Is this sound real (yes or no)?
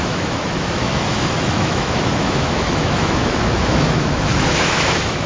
no